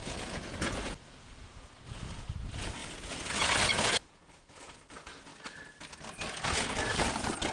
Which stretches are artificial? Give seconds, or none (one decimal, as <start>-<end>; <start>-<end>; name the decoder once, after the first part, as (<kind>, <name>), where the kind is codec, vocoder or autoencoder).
0.0-5.3 (vocoder, Vocos); 6.3-6.9